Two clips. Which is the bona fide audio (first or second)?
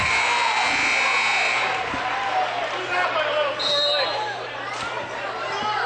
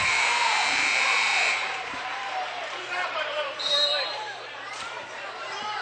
first